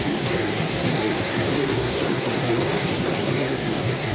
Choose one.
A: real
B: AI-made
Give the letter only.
B